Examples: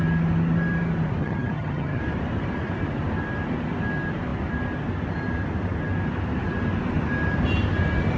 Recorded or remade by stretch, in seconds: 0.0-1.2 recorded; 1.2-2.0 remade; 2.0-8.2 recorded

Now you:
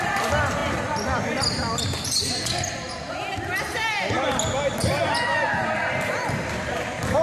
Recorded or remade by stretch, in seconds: 0.0-7.2 recorded

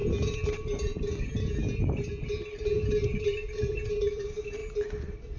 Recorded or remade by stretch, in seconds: 0.0-0.5 recorded; 0.5-0.9 remade; 0.9-3.9 recorded; 3.9-4.6 remade; 4.6-5.4 recorded

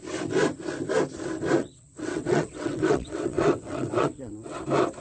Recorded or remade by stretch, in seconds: 0.0-1.6 recorded; 1.6-4.6 remade; 4.6-5.0 recorded

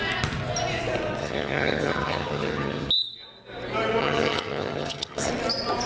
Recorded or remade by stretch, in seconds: 0.0-1.2 recorded; 1.2-2.9 remade; 2.9-4.0 recorded; 4.0-5.3 remade; 5.3-5.9 recorded